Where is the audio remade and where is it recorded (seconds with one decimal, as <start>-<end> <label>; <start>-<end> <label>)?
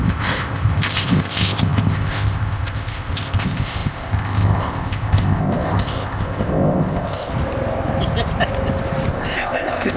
0.0-7.3 remade; 7.3-9.1 recorded; 9.1-10.0 remade